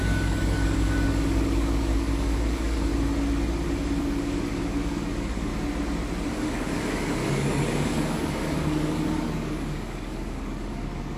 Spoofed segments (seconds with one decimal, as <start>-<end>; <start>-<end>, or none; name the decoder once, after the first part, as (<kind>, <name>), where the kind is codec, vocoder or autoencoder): 0.0-2.9 (codec, DAC); 4.0-5.5; 6.3-11.2